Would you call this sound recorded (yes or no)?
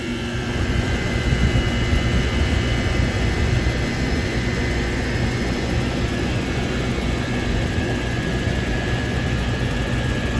no